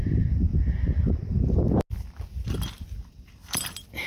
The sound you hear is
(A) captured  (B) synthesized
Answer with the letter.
A